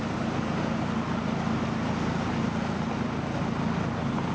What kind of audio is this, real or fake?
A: real